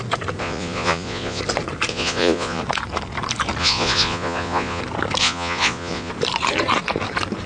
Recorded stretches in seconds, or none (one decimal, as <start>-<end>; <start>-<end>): 0.0-0.4; 1.4-1.9; 2.6-3.6; 4.8-5.2; 6.1-7.5